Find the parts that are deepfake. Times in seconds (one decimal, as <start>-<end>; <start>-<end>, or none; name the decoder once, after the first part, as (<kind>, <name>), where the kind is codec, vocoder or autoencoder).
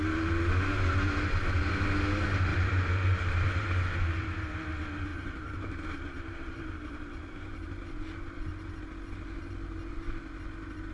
2.5-3.6 (vocoder, BigVGAN v2); 5.1-7.9